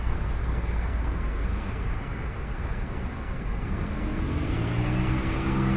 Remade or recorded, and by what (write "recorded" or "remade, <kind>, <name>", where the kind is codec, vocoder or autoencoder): remade, codec, SNAC